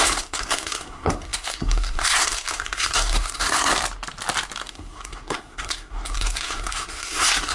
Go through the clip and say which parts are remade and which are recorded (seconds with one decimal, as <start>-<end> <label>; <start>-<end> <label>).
0.0-3.7 remade; 3.7-4.7 recorded; 4.7-7.5 remade